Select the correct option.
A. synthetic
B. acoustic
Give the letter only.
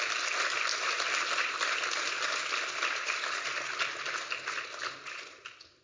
B